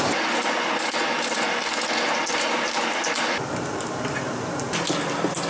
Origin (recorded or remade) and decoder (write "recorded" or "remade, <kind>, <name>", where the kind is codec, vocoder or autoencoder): recorded